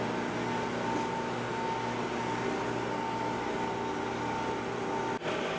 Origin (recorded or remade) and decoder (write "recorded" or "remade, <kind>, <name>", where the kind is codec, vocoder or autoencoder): recorded